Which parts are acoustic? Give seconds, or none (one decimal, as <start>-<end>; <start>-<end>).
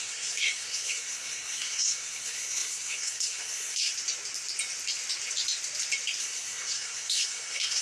3.9-6.2